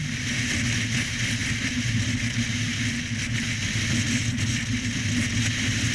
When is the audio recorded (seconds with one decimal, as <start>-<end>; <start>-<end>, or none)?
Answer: 0.0-5.9

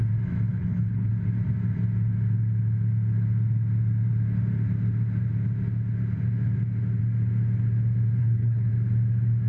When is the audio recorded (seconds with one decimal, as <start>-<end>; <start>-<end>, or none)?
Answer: 0.0-0.5; 1.1-8.2; 8.7-9.5